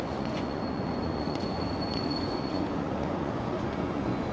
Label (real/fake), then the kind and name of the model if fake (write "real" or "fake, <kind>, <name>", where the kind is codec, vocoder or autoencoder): fake, vocoder, Vocos